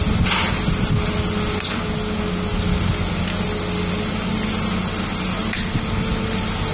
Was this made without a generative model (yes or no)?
yes